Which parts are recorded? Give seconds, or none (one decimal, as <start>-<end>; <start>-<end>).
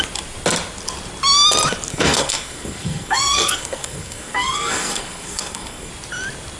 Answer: 0.0-1.9; 5.9-6.6